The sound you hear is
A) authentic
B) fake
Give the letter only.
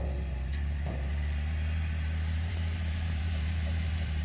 B